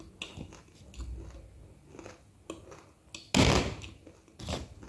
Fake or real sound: real